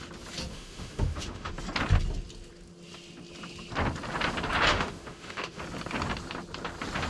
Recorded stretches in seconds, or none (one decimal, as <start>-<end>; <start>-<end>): 0.0-0.5; 1.5-4.7; 5.6-7.1